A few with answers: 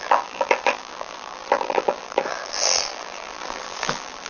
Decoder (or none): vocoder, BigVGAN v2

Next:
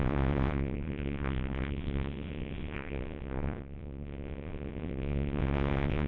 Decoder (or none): vocoder, WaveNeXt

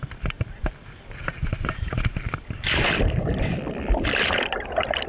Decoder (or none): none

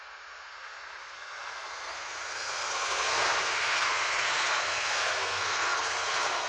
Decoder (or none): codec, SNAC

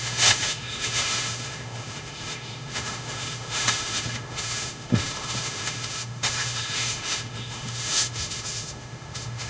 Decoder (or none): autoencoder, DAC-VAE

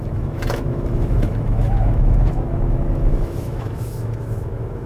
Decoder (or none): autoencoder, DAC-VAE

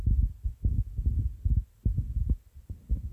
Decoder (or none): none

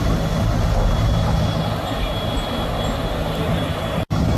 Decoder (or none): none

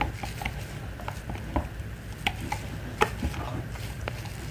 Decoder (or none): none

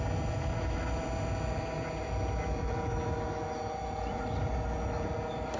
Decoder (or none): none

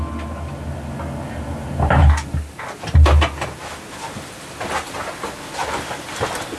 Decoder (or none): none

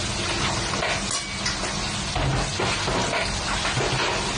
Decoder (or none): none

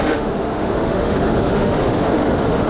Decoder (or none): autoencoder, DAC-VAE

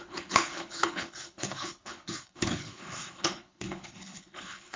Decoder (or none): codec, HILCodec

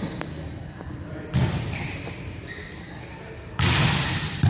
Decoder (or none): none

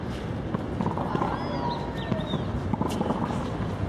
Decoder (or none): none